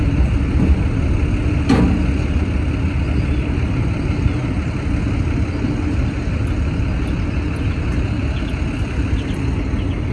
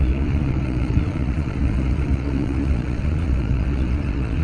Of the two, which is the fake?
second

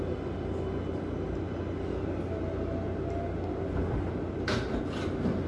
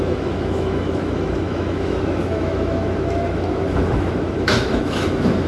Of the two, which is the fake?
second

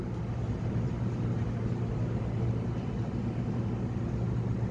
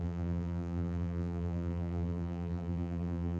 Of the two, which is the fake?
second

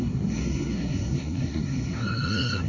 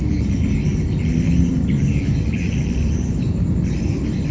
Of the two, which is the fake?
first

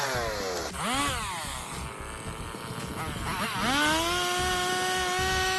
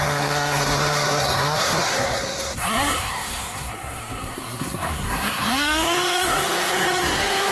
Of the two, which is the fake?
second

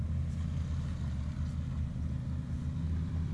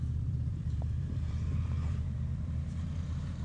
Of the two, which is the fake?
second